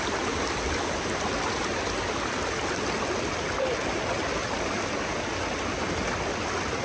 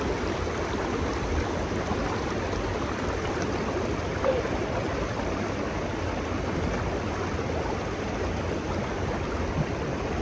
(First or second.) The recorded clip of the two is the first